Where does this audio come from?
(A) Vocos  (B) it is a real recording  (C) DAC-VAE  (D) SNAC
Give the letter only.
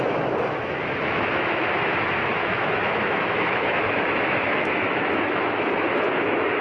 C